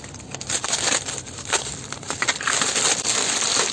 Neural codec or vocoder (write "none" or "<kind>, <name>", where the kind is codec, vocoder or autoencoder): none